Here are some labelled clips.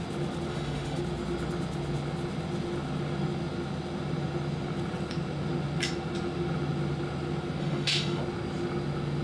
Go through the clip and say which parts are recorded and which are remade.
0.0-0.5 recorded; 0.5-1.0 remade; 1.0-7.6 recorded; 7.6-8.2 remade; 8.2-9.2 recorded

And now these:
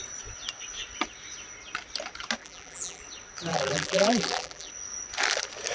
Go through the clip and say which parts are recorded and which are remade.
0.0-2.4 recorded; 2.4-3.0 remade; 3.0-3.5 recorded; 3.5-4.7 remade; 4.7-5.7 recorded